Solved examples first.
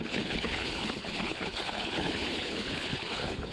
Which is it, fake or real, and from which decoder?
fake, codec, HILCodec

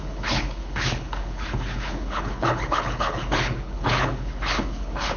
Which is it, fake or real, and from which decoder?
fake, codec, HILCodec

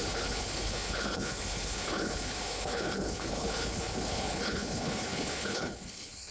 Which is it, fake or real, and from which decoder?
fake, codec, HILCodec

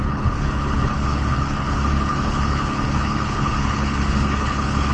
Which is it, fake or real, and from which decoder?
fake, codec, HILCodec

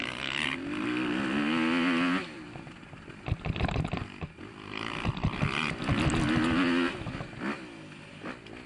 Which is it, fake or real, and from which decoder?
real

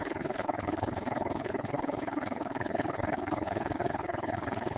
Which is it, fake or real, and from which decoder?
fake, codec, HILCodec